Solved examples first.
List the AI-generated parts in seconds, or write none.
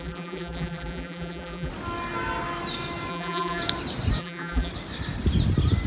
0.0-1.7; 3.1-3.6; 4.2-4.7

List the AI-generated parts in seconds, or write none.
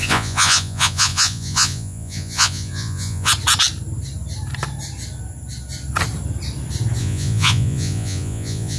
0.0-3.3; 7.0-8.8